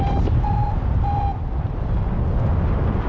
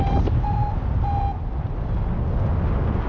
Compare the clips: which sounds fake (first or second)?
first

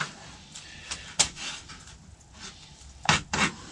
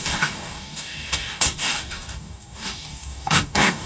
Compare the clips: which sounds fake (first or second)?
second